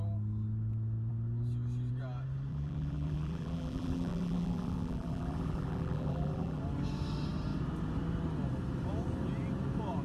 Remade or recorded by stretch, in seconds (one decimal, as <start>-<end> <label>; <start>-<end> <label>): 0.0-2.5 recorded; 2.5-6.6 remade; 6.6-10.0 recorded